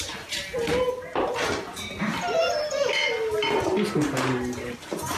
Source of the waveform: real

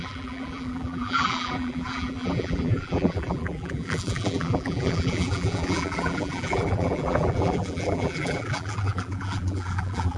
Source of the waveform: fake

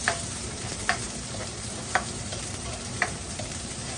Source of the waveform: fake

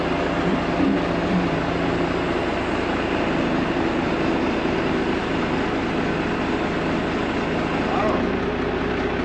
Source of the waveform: real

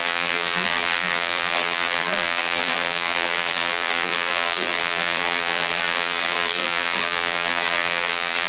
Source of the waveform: fake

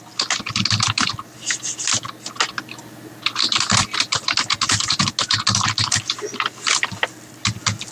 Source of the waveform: real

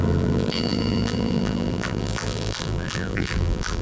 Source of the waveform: fake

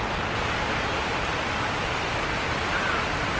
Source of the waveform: fake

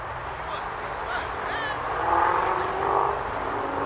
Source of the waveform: real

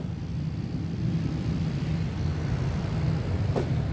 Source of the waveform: fake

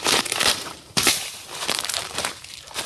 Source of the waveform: fake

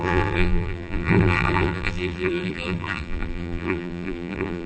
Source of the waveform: fake